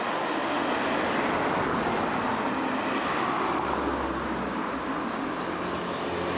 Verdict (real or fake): real